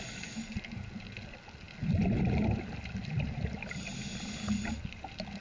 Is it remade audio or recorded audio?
recorded